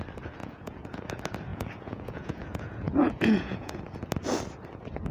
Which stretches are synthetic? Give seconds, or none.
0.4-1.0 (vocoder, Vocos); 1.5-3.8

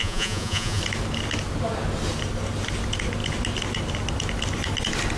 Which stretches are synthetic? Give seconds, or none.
0.0-0.8 (vocoder, Vocos)

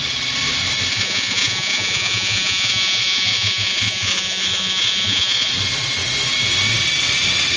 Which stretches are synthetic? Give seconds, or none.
0.9-5.5 (vocoder, Vocos)

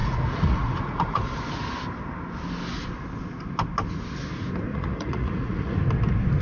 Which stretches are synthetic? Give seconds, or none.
0.0-1.3 (vocoder, Vocos); 4.7-5.8

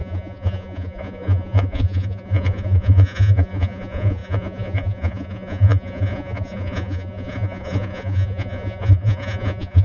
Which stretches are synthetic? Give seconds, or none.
0.0-9.8 (vocoder, Vocos)

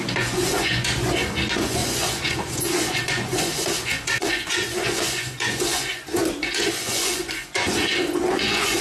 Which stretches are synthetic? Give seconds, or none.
0.0-8.8 (vocoder, Vocos)

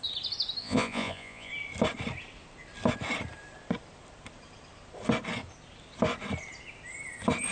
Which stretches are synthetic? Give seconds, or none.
0.6-1.5 (vocoder, Vocos)

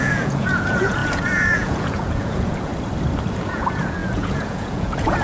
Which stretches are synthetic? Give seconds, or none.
0.0-2.7 (vocoder, Vocos); 3.3-5.2